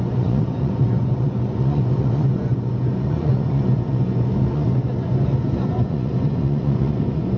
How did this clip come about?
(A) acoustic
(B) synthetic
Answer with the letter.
B